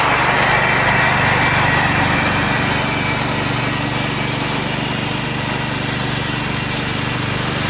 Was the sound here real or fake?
real